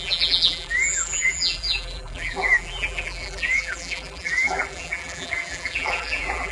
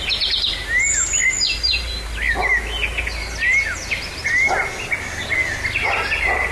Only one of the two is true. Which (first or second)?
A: second